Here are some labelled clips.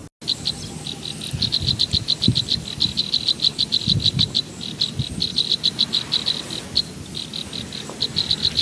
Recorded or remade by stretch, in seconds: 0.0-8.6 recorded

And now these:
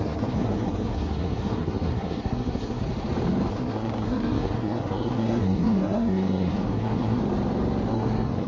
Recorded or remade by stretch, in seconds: 0.0-2.8 remade; 2.8-3.5 recorded; 3.5-7.2 remade; 7.2-7.9 recorded; 7.9-8.5 remade

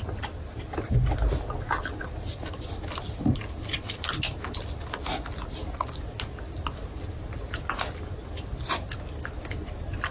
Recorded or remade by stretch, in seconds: 0.0-10.1 recorded

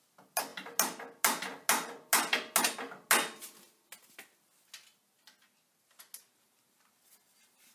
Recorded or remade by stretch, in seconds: 0.0-7.7 recorded

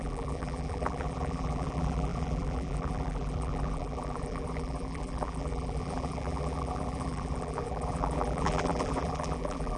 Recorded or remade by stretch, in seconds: 0.0-9.8 remade

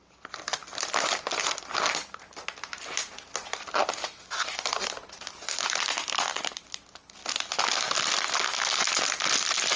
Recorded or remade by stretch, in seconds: 0.0-9.8 recorded